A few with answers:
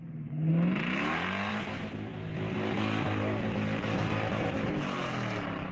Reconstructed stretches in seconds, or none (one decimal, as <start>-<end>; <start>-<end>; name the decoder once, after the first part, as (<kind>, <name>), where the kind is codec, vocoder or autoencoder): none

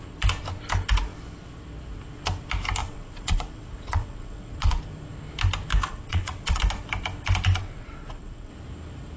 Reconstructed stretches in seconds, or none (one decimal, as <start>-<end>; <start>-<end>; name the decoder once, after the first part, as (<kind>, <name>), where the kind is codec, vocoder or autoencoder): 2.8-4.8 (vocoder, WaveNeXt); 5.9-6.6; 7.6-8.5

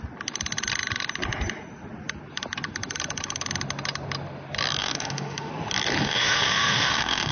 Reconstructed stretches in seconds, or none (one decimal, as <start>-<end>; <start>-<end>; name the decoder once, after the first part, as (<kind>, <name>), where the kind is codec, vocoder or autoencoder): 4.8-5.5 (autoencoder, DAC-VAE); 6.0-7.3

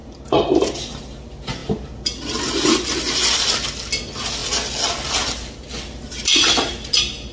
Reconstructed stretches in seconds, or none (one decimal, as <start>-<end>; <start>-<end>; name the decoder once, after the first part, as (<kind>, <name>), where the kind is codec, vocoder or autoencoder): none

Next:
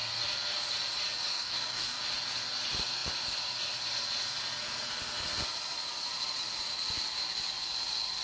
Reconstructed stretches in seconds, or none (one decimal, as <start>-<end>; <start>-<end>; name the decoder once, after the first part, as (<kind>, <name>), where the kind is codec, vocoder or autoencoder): 1.3-2.0 (codec, DAC)